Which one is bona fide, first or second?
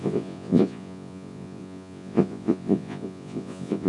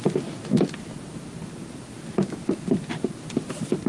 second